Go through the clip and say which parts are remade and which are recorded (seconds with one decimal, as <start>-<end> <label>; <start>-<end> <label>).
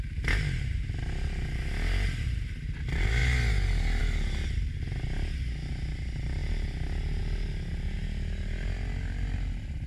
0.0-9.9 recorded